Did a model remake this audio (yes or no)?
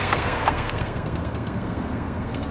yes